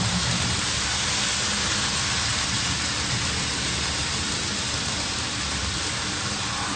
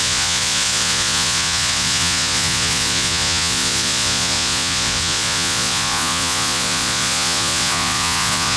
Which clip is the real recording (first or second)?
first